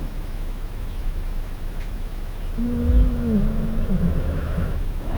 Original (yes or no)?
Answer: no